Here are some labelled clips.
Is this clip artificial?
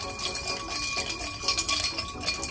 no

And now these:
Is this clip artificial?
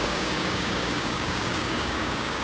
yes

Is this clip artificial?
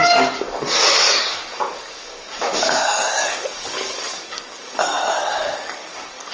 yes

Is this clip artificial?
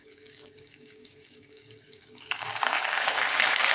yes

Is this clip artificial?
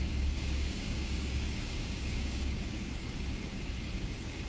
yes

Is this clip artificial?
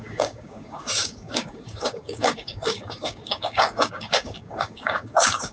yes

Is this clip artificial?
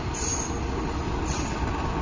no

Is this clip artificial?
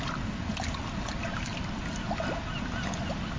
no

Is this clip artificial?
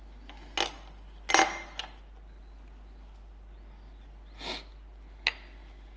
no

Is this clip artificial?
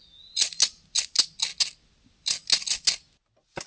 no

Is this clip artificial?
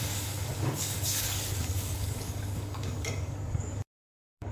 yes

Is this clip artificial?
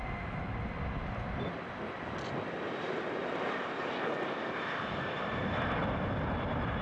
no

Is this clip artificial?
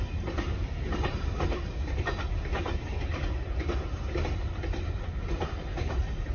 no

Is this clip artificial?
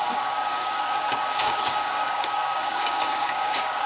yes